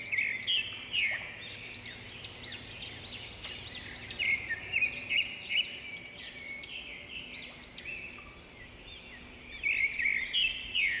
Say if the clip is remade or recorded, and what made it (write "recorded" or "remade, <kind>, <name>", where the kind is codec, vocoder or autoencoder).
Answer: recorded